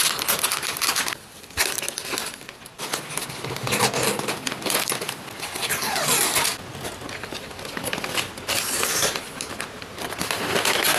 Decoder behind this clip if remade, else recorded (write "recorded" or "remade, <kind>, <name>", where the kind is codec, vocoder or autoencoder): recorded